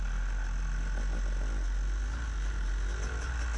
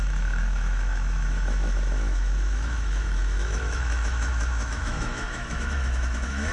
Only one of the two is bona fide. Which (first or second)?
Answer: first